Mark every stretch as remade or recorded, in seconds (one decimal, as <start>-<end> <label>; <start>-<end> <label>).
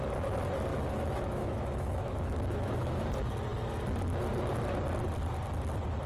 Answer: 0.0-0.7 recorded; 0.7-3.0 remade; 3.0-6.1 recorded